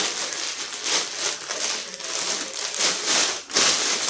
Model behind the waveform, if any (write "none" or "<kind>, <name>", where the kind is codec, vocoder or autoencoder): none